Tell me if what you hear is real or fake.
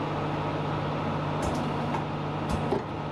real